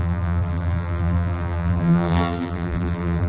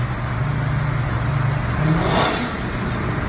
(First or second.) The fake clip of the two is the first